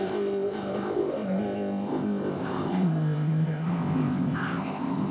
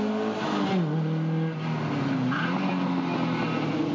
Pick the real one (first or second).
second